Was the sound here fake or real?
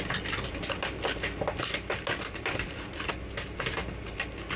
real